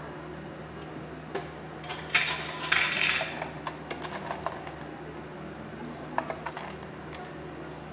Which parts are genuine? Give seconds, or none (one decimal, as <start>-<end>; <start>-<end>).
0.0-7.9